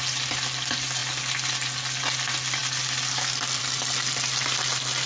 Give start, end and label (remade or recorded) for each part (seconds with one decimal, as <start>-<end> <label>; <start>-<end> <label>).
0.0-5.1 recorded